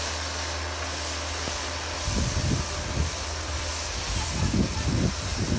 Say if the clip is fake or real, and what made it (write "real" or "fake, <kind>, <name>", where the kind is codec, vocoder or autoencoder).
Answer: real